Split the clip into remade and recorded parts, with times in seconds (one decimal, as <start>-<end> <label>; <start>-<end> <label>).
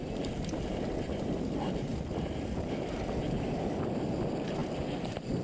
0.0-5.4 recorded